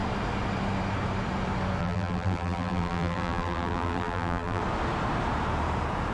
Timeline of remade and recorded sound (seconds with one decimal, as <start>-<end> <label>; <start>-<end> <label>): 0.0-1.8 recorded; 1.8-4.6 remade; 4.6-6.1 recorded